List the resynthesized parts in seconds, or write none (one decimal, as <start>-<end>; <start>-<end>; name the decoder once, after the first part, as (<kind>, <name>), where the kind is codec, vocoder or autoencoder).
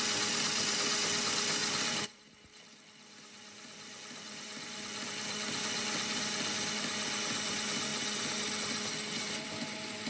none